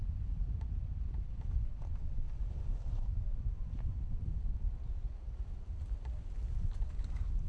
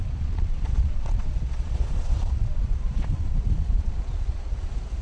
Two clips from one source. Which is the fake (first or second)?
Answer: second